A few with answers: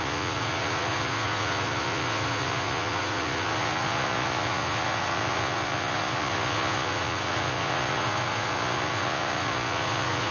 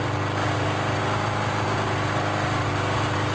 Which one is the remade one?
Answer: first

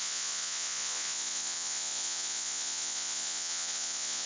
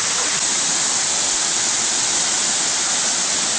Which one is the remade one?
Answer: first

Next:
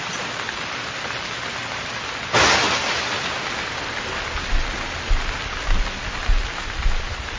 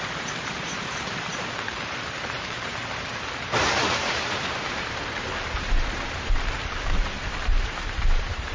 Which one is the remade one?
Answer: second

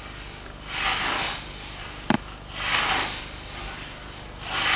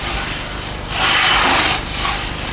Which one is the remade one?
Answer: second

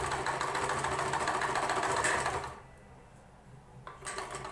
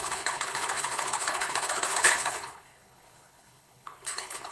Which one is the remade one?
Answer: second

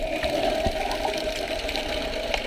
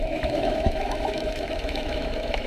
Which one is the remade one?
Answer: second